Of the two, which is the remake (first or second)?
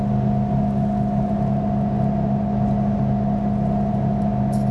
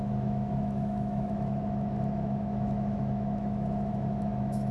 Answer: second